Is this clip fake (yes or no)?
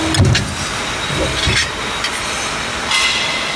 no